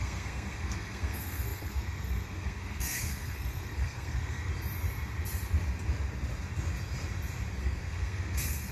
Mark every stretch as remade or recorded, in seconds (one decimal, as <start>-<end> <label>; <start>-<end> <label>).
0.0-4.5 remade; 4.5-7.6 recorded; 7.6-8.7 remade